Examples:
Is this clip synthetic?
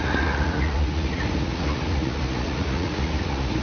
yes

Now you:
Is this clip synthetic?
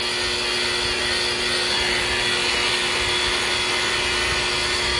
no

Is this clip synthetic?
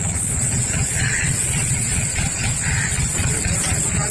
yes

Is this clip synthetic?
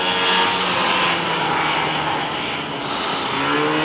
no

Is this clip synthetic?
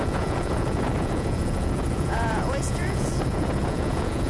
yes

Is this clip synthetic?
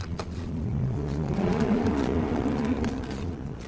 yes